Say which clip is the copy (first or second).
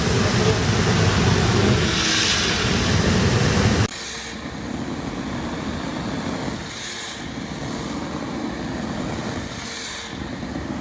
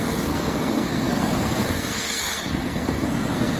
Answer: second